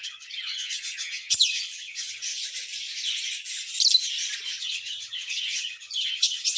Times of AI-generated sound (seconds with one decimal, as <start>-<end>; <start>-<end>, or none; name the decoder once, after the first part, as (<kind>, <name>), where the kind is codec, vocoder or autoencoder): 0.0-2.3 (vocoder, HiFi-GAN); 4.6-6.6